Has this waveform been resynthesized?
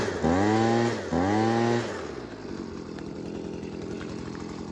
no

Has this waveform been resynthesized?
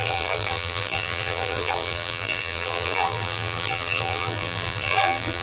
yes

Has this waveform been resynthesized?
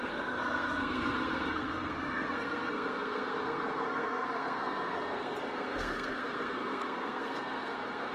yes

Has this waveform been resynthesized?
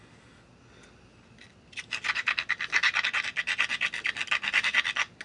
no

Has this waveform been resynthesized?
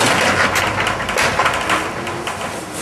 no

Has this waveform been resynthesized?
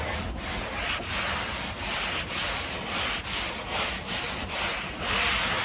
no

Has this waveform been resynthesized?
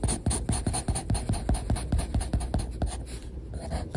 no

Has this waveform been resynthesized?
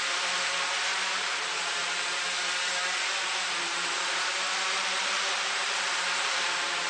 yes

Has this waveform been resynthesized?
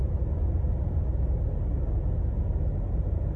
no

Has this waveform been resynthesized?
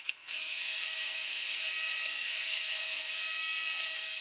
yes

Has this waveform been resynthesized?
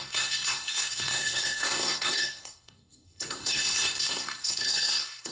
yes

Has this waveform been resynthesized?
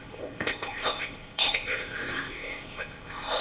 yes